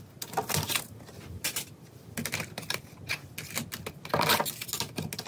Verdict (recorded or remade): recorded